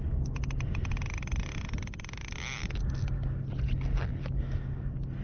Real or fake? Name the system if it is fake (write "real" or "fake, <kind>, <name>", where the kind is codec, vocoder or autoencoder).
real